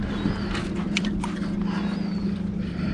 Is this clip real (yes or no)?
yes